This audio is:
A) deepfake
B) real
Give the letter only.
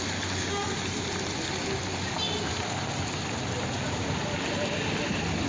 B